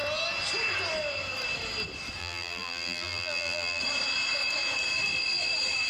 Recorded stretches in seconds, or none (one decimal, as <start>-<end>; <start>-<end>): 0.0-2.2; 3.8-5.9

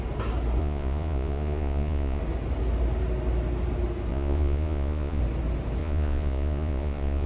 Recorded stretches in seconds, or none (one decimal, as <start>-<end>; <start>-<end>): 0.0-0.6; 2.2-4.1; 5.2-5.8

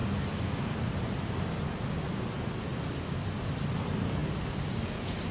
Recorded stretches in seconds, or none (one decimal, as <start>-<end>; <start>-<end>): 1.2-5.3

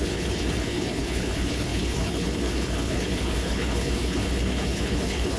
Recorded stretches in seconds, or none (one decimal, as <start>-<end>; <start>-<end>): none

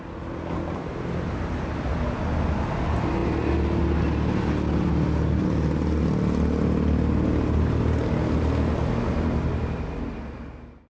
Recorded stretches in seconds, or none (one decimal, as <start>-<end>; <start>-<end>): 0.0-10.9

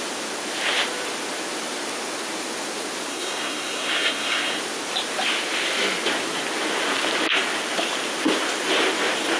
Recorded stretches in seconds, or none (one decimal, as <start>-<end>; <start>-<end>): 0.0-3.1; 4.6-9.4

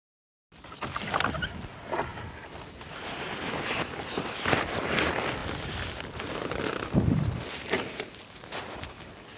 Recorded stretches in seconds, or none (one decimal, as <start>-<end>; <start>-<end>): 0.0-9.4